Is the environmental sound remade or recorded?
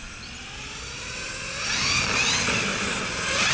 recorded